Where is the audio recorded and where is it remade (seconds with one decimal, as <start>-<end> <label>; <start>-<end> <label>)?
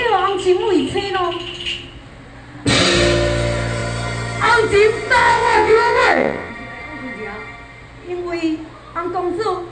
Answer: 0.0-5.2 recorded; 5.2-6.5 remade; 6.5-9.7 recorded